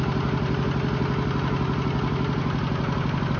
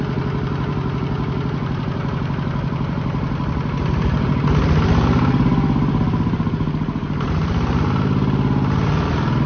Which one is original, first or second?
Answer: first